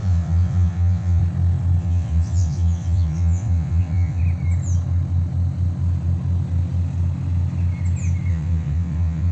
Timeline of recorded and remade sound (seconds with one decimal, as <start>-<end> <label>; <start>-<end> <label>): 0.0-1.2 remade; 1.2-1.8 recorded; 1.8-4.2 remade; 4.2-8.3 recorded; 8.3-9.3 remade